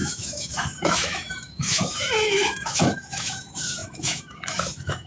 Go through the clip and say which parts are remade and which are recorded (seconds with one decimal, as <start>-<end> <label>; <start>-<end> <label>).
0.0-5.1 remade